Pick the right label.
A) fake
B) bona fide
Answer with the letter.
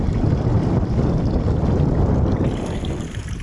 A